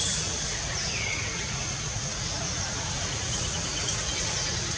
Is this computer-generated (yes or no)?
yes